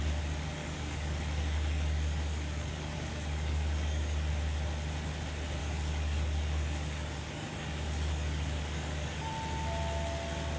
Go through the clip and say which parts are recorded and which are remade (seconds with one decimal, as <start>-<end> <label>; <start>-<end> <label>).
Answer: 0.0-0.6 recorded; 0.6-4.3 remade; 4.3-5.6 recorded; 5.6-9.3 remade; 9.3-10.6 recorded